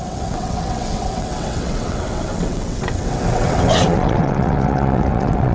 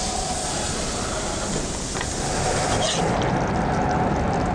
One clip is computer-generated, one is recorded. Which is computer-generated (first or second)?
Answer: first